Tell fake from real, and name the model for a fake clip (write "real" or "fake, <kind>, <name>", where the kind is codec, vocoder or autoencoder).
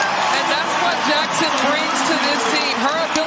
real